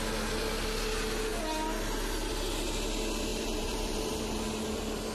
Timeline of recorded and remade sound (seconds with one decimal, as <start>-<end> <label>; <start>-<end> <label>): 0.0-3.3 recorded; 3.3-4.1 remade; 4.1-5.1 recorded